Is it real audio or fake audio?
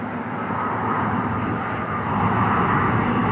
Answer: real